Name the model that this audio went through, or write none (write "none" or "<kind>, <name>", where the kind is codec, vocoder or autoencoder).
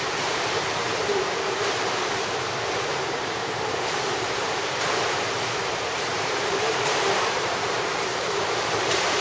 vocoder, BigVGAN v2